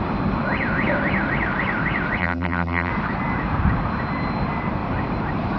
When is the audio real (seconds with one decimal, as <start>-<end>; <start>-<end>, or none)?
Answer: 0.0-2.2; 2.9-5.6